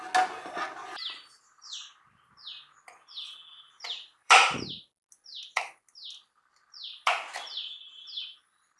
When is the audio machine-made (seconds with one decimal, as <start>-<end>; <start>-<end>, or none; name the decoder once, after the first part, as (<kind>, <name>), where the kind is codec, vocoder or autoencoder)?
4.1-4.8 (vocoder, BigVGAN v2)